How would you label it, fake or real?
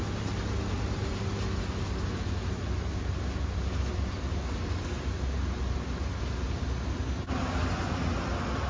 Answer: real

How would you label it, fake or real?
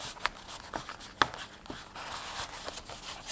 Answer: real